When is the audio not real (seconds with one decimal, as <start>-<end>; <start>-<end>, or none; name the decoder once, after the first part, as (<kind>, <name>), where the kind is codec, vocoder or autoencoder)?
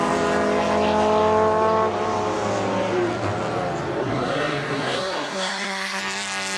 4.0-6.0 (codec, SNAC)